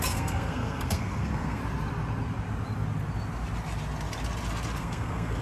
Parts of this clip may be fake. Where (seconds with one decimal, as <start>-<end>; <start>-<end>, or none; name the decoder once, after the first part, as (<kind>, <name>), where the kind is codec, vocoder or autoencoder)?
0.0-1.6 (codec, SNAC); 4.8-5.4